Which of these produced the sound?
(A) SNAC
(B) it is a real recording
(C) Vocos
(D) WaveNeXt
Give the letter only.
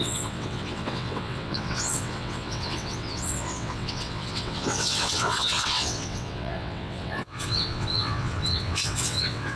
D